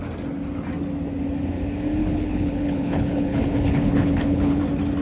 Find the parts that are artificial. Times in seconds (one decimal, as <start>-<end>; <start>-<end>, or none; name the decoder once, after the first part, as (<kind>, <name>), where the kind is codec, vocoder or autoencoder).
2.0-4.6 (codec, HILCodec)